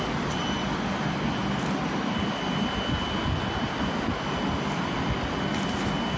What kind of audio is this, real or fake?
real